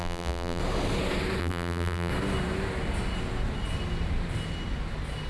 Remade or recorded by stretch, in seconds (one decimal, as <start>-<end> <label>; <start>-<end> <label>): 0.0-0.6 remade; 0.6-1.4 recorded; 1.4-2.1 remade; 2.1-5.3 recorded